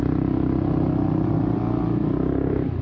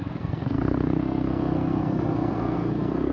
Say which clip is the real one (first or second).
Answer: first